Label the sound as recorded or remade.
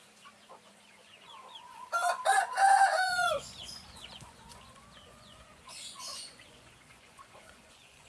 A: remade